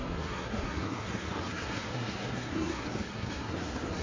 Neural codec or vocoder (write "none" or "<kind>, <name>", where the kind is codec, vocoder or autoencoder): codec, SNAC